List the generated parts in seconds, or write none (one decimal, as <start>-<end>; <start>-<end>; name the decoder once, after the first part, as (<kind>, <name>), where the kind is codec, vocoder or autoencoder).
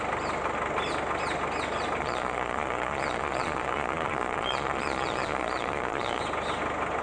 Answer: 2.0-6.2 (vocoder, Vocos)